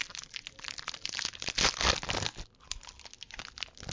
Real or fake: real